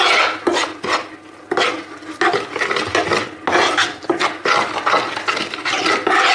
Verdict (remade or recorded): recorded